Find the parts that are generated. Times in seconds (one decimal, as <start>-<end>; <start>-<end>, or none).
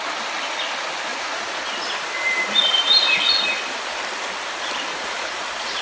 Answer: 1.1-1.6; 4.9-5.8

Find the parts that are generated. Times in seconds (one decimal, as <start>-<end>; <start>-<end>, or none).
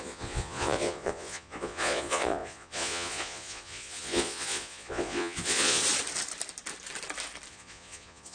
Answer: 0.0-5.8; 7.5-8.3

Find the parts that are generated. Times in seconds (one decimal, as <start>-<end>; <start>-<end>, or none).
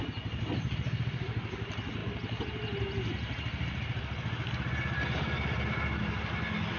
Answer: none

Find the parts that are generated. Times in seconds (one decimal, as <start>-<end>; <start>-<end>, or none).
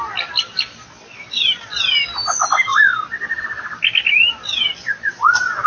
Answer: none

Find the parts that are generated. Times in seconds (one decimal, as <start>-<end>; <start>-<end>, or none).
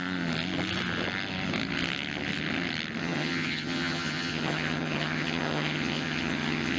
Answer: 3.0-6.8